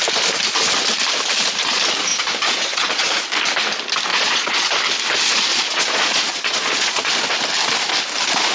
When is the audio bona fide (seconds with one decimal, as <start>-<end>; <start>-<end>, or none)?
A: 0.0-2.1; 3.2-4.1; 4.7-5.5; 7.1-8.5